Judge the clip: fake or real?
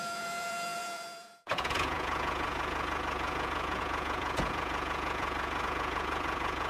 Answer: fake